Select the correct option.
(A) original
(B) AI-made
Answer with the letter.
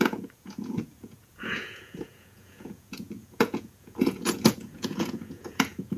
B